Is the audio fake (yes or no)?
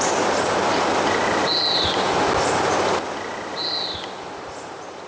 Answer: no